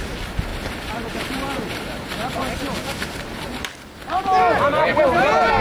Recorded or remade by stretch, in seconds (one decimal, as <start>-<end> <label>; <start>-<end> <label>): 0.0-0.5 recorded; 0.5-3.7 remade; 3.7-5.6 recorded